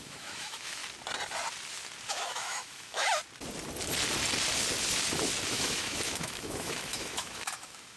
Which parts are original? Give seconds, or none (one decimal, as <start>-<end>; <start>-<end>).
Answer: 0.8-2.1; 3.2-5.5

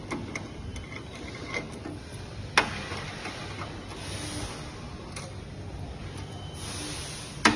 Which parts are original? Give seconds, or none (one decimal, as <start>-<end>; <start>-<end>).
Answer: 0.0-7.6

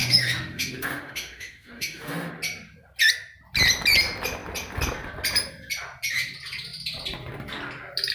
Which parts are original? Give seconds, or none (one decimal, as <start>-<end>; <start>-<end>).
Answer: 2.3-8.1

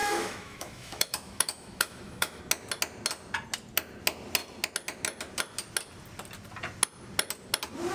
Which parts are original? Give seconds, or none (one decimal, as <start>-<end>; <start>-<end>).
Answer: 2.4-7.9

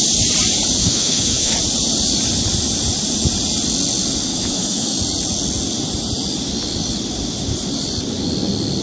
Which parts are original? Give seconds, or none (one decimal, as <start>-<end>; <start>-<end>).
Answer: 0.0-0.8; 1.5-4.3; 5.0-8.8

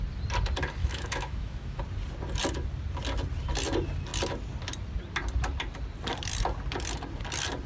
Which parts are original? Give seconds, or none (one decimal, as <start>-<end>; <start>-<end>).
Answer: 0.0-0.8; 1.8-7.7

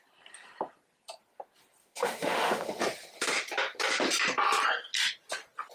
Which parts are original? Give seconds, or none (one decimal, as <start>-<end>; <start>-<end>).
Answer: 0.0-1.8; 2.8-5.7